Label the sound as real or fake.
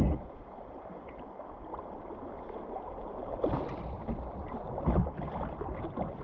real